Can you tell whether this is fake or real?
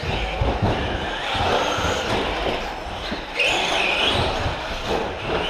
real